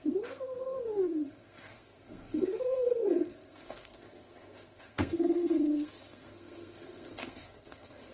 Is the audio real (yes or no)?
no